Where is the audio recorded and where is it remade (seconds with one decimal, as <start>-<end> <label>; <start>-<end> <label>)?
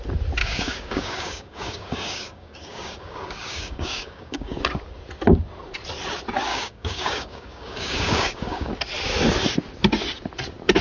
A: 0.0-0.4 recorded; 0.4-4.6 remade; 4.6-6.5 recorded; 6.5-8.7 remade; 8.7-10.8 recorded